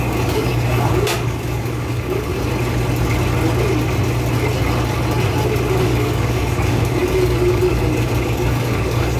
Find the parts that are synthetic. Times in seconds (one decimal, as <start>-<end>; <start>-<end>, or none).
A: 0.0-2.3; 5.7-9.2

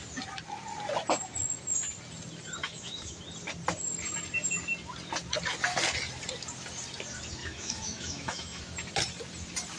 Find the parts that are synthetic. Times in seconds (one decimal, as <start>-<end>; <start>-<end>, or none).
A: 2.6-3.2; 7.4-8.6

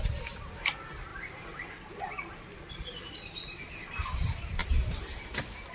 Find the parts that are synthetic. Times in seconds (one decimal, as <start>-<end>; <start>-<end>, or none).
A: 1.1-2.1

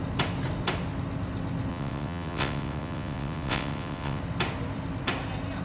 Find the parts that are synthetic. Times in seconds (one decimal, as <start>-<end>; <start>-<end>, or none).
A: 1.7-4.2